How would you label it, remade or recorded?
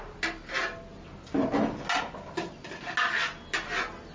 recorded